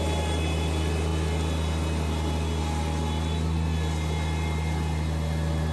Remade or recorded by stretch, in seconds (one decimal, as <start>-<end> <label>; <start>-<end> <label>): 0.0-5.7 recorded